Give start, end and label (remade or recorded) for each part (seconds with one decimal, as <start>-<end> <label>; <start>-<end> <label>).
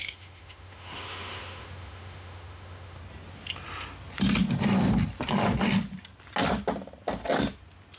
0.0-3.0 remade; 3.0-8.0 recorded